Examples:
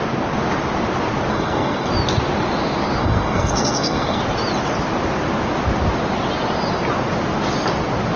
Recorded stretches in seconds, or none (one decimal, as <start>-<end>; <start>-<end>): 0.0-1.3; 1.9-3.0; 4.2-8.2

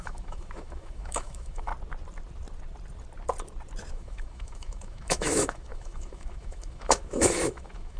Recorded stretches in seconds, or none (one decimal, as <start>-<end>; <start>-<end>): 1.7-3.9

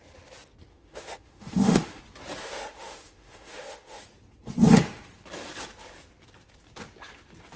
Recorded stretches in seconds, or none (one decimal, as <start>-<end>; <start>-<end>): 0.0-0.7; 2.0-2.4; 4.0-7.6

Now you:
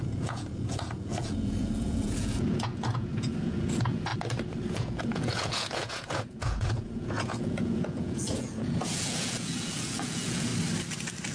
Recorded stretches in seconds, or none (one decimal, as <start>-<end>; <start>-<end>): 4.1-4.7; 10.5-11.3